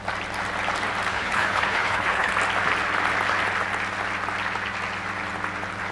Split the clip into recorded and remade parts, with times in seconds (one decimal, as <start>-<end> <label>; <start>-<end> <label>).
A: 0.0-1.1 recorded; 1.1-2.3 remade; 2.3-5.9 recorded